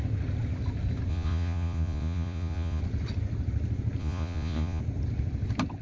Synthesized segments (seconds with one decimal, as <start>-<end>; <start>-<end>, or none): 1.1-2.8; 4.0-4.8